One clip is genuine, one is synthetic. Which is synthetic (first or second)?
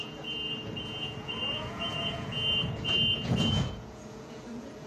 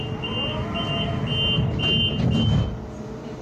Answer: first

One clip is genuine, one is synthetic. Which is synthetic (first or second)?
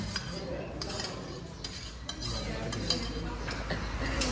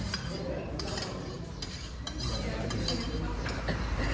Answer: second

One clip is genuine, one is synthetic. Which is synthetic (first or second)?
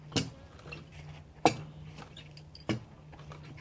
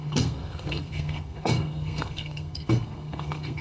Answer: second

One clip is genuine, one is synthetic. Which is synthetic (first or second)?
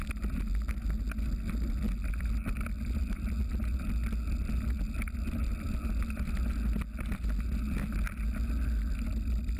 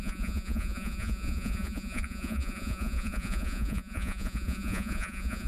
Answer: second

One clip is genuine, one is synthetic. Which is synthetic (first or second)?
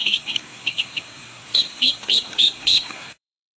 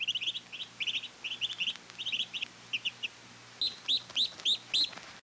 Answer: first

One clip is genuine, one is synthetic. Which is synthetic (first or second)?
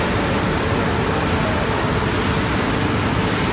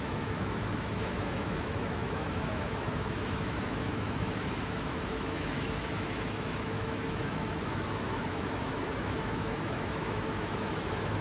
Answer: second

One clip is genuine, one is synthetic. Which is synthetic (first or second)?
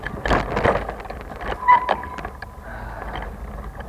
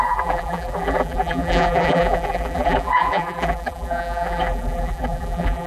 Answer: second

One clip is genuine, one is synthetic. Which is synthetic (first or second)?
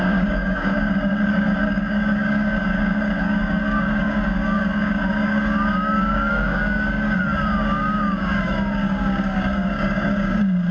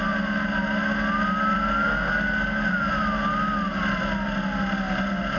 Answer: first